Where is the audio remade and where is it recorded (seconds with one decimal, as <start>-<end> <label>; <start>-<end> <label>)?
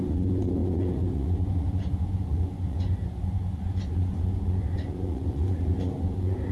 0.0-6.5 remade